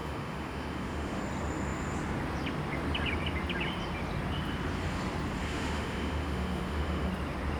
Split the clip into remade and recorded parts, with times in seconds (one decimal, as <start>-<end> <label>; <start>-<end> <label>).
0.0-1.2 remade; 1.2-5.4 recorded; 5.4-7.1 remade; 7.1-7.6 recorded